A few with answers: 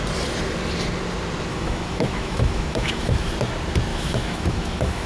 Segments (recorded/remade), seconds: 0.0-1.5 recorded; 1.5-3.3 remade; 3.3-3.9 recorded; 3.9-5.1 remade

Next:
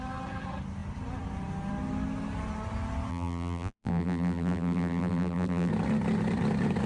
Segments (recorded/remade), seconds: 0.0-3.1 recorded; 3.1-5.7 remade; 5.7-6.9 recorded

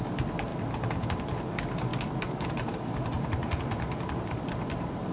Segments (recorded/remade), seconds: 0.0-5.1 remade

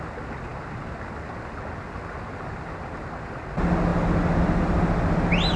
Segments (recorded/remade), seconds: 0.0-5.6 recorded